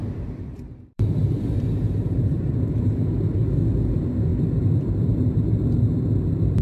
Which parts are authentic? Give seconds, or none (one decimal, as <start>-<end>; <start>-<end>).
3.4-3.9